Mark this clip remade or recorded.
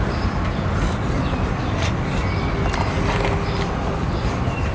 recorded